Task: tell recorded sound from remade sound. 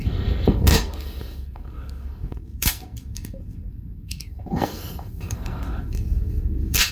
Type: remade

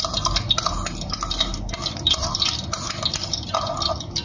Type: recorded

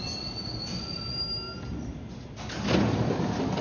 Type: recorded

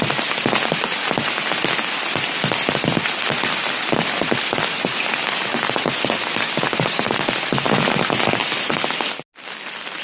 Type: recorded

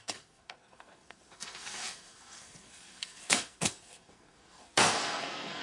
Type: remade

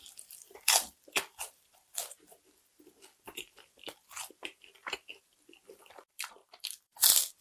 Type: remade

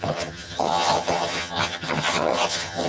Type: remade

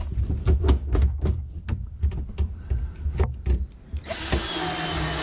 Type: recorded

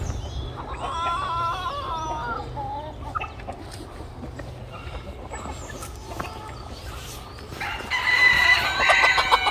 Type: recorded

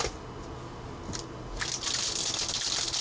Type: recorded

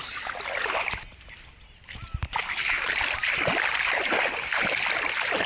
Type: recorded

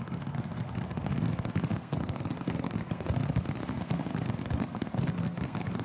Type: remade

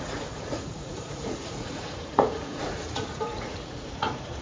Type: remade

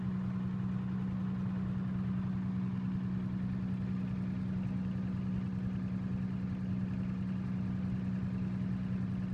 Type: recorded